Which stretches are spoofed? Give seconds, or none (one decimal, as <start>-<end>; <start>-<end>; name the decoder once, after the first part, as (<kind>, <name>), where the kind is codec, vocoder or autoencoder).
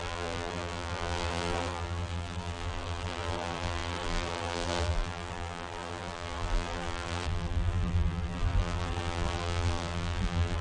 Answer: 0.0-10.6 (vocoder, BigVGAN v2)